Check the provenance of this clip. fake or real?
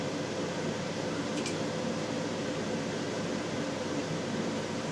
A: fake